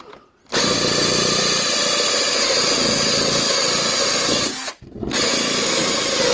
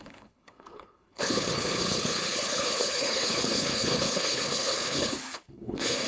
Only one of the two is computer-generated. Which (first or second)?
second